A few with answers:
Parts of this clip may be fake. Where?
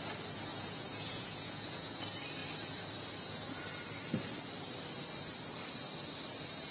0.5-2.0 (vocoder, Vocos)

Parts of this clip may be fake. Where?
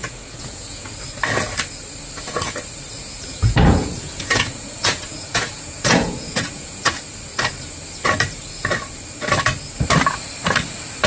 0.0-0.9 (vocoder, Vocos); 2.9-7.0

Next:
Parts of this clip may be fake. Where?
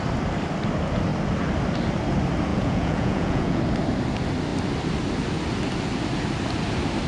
2.5-3.6 (vocoder, Vocos)